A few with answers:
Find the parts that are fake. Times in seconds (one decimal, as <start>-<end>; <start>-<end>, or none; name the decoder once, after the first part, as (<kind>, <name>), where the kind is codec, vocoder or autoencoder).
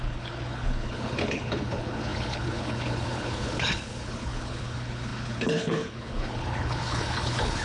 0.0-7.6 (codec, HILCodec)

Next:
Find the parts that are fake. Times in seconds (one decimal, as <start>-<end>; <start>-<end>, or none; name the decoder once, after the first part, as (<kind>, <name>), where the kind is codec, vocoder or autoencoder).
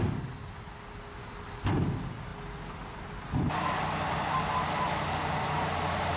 none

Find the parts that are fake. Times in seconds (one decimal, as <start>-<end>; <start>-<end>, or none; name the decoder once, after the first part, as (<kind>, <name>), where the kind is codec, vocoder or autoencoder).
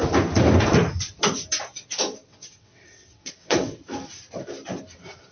2.2-3.8 (vocoder, WaveNeXt)